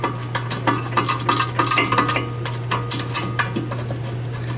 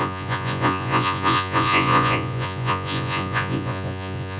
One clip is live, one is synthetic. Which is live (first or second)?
first